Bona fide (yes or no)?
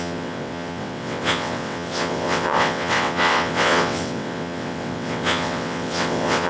no